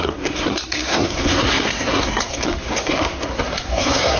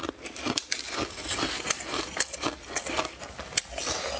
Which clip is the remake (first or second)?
first